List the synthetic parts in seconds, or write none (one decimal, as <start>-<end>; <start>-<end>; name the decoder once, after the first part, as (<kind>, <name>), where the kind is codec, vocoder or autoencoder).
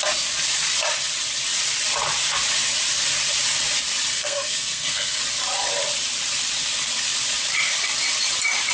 4.1-5.2 (codec, SNAC)